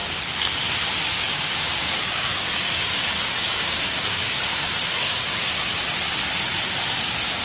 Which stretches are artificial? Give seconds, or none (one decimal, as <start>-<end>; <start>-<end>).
0.0-0.6; 1.1-5.5